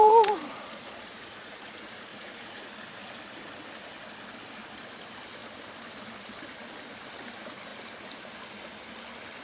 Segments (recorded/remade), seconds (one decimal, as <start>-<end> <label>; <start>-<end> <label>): 0.0-1.7 remade; 1.7-2.1 recorded; 2.1-2.7 remade; 2.7-9.4 recorded